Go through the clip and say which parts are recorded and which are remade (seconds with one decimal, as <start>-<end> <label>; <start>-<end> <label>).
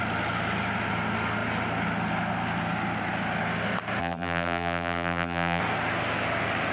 0.0-4.0 recorded; 4.0-5.6 remade; 5.6-6.7 recorded